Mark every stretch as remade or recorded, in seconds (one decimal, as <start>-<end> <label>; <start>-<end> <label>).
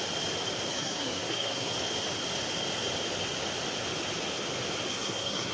0.0-0.7 recorded; 0.7-1.7 remade; 1.7-4.9 recorded; 4.9-5.5 remade